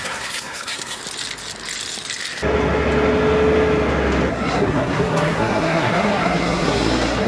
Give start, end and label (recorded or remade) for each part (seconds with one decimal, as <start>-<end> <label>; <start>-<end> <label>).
0.0-1.0 remade; 1.0-4.3 recorded; 4.3-7.3 remade